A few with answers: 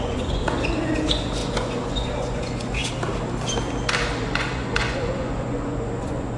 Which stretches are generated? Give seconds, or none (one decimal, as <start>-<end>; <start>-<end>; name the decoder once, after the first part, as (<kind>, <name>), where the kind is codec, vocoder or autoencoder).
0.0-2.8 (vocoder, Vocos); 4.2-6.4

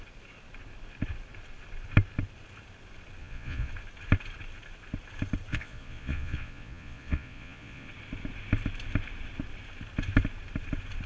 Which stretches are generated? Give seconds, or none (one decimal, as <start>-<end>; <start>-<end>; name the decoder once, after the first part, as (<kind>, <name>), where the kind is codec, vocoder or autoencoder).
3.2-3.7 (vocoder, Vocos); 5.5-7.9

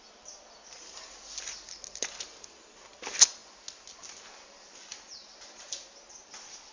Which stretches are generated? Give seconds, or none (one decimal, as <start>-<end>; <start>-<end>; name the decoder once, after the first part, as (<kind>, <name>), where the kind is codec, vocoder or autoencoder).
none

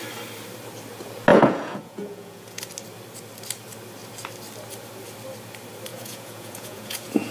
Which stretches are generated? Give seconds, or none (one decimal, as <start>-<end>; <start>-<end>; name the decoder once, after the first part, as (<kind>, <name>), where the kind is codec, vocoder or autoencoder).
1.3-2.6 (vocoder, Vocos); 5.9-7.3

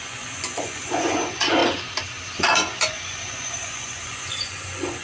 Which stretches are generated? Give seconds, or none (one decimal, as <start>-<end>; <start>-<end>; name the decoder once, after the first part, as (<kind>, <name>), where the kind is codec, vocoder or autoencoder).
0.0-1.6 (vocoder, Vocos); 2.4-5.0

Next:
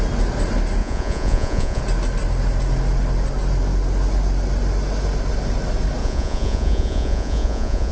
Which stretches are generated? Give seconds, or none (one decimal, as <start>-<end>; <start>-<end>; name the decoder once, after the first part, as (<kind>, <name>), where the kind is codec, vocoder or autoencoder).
0.8-1.8 (vocoder, Vocos); 6.0-7.9